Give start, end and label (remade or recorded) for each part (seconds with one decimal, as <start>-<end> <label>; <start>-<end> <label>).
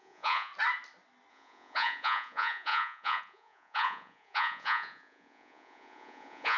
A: 0.0-0.5 remade; 0.5-1.3 recorded; 1.3-6.6 remade